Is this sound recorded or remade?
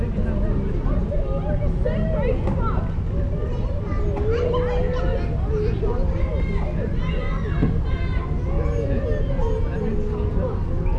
recorded